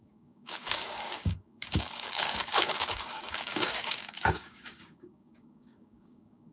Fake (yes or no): yes